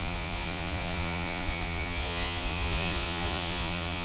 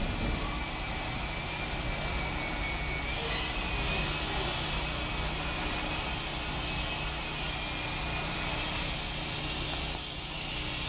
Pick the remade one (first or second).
first